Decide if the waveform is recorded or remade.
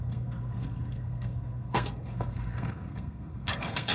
remade